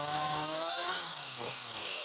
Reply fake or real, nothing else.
fake